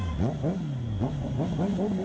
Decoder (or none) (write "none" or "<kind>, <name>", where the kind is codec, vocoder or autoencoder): none